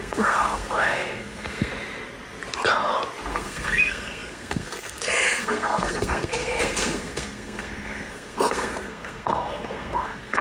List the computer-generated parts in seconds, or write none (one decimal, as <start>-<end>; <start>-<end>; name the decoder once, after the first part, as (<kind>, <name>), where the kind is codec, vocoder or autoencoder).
0.0-1.7 (codec, SNAC); 3.3-10.4